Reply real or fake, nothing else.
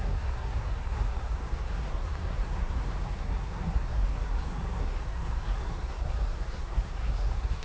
fake